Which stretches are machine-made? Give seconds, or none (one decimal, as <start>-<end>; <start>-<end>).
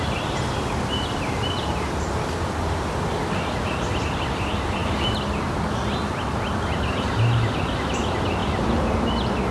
8.4-9.1